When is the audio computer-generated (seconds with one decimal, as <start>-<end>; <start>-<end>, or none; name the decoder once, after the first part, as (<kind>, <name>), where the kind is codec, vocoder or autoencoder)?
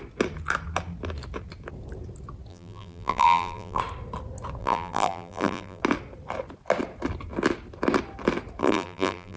2.5-3.8 (vocoder, BigVGAN v2); 4.6-5.8; 8.6-9.4